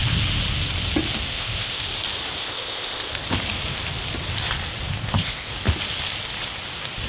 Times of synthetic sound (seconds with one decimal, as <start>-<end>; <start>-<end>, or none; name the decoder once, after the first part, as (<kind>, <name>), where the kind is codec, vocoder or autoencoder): 1.3-1.8 (codec, ZipCodec); 2.4-3.1; 4.9-5.5